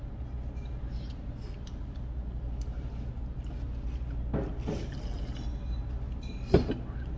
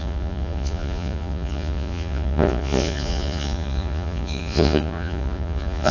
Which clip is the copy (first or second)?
second